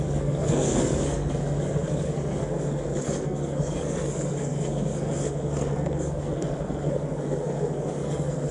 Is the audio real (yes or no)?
no